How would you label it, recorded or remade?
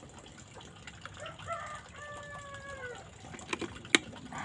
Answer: recorded